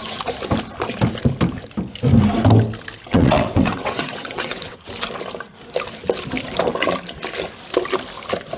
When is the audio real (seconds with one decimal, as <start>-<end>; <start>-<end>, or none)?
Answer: 0.0-3.1; 4.9-8.6